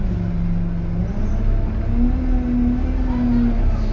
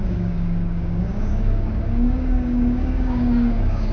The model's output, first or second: second